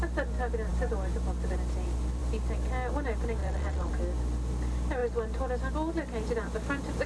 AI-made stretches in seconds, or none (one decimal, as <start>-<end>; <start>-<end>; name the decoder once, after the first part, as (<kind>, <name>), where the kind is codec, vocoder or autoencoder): 3.4-3.9 (vocoder, WaveNeXt)